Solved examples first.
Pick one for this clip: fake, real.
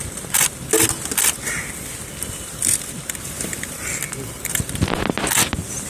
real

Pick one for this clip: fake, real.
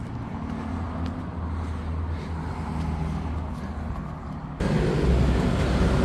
real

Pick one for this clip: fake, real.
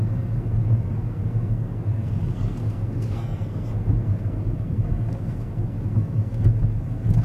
fake